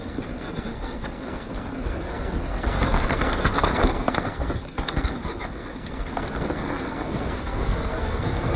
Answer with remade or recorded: remade